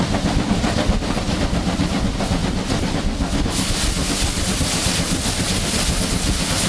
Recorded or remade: recorded